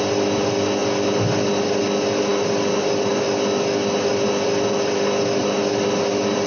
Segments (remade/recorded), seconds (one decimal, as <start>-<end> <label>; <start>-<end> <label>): 0.0-6.5 recorded